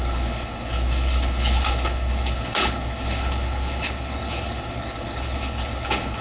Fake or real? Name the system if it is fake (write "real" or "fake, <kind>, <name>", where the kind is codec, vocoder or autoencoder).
fake, codec, HILCodec